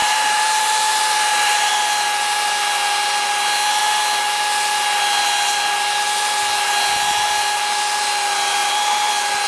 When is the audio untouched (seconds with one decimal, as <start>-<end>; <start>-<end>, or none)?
1.7-8.6; 9.1-9.5